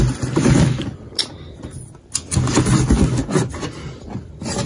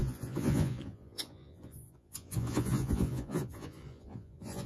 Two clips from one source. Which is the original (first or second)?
first